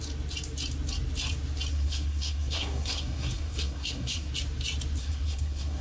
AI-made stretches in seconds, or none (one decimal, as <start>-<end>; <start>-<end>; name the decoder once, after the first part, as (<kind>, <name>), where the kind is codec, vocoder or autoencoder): 1.7-4.3 (codec, SNAC); 5.0-5.8